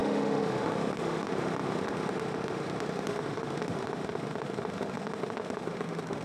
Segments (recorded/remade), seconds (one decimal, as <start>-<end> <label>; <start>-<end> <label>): 0.0-6.2 remade